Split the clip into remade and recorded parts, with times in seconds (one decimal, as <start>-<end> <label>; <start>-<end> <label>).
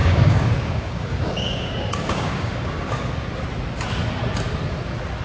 0.0-3.1 remade; 3.1-5.2 recorded